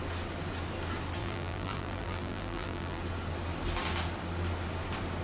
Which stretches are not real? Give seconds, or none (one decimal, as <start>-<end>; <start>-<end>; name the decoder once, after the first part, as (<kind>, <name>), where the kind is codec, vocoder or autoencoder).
1.2-3.0 (vocoder, BigVGAN v2)